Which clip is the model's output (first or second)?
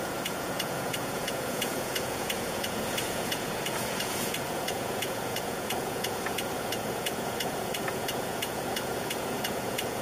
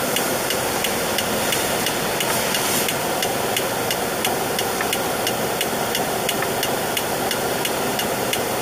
first